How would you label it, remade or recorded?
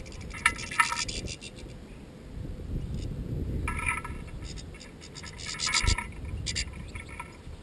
recorded